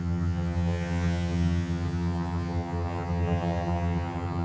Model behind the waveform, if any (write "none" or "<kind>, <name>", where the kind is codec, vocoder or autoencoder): vocoder, HiFi-GAN